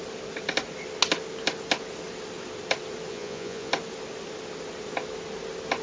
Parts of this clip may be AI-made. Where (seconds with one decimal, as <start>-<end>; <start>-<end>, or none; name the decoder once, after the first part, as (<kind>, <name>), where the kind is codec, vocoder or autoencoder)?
3.1-3.7 (vocoder, Vocos)